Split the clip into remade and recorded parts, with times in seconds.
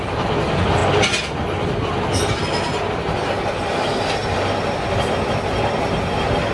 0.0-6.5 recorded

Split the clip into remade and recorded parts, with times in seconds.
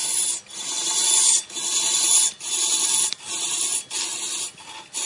0.0-5.1 recorded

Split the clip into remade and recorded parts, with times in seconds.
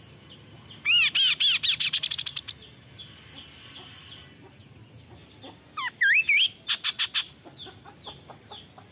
0.0-8.9 recorded